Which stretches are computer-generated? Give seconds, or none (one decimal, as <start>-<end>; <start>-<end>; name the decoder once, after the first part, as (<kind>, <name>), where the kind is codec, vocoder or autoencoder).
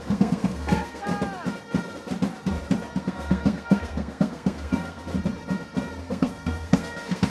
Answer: 0.0-1.1 (codec, SNAC); 3.0-5.1; 6.0-7.3